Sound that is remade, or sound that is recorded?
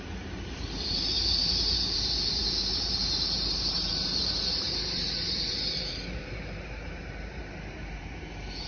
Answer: remade